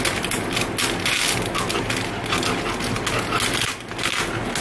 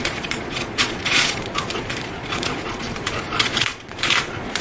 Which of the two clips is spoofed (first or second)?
second